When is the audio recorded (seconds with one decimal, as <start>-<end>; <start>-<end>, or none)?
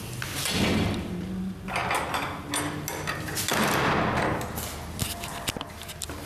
0.0-6.3